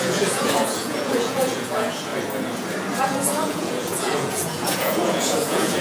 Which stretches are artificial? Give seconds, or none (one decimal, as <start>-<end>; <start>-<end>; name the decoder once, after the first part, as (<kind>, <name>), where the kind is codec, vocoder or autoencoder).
0.0-2.1 (vocoder, Vocos); 3.0-5.8